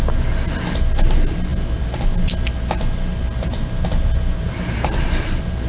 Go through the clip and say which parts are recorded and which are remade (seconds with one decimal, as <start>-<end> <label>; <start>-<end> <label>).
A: 0.0-5.7 recorded